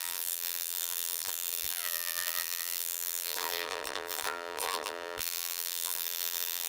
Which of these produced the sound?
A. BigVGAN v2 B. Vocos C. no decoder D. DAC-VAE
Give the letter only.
A